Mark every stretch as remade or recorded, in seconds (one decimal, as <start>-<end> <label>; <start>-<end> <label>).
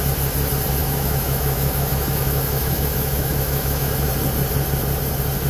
0.0-0.8 recorded; 0.8-4.1 remade; 4.1-5.5 recorded